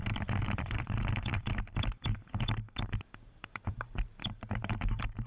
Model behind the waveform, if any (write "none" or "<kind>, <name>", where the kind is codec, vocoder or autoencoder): vocoder, BigVGAN v2